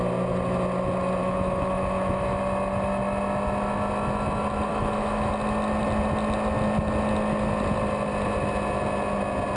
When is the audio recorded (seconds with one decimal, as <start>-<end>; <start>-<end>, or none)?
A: 0.0-1.2; 2.4-4.7; 5.3-9.6